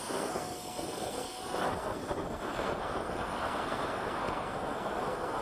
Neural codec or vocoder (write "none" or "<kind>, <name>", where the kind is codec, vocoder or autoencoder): codec, SNAC